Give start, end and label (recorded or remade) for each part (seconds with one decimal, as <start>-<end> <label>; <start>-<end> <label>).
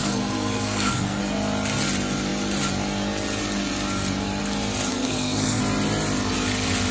0.0-1.2 remade; 1.2-4.9 recorded; 4.9-5.6 remade; 5.6-6.9 recorded